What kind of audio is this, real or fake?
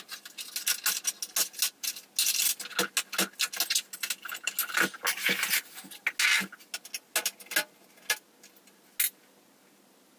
real